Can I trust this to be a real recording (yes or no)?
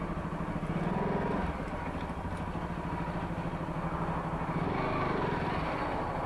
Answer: yes